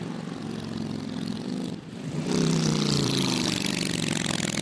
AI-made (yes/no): yes